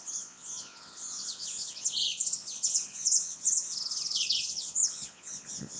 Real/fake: fake